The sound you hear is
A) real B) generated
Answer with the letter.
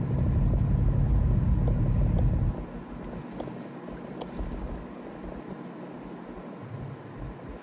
A